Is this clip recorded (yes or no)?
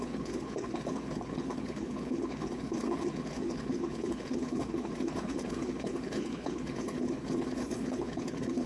no